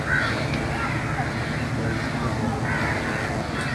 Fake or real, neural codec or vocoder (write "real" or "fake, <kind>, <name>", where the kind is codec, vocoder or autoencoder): real